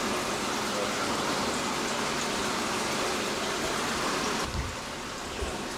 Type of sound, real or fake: real